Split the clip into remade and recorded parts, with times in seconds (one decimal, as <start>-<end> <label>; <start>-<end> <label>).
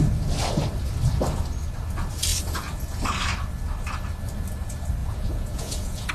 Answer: 0.0-5.0 recorded; 5.0-6.1 remade